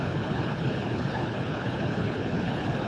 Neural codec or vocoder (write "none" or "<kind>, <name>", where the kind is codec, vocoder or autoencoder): codec, HILCodec